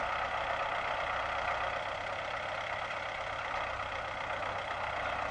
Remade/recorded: recorded